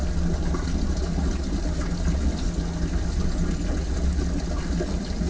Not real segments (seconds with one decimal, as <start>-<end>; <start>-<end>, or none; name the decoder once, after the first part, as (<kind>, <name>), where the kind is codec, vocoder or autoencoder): none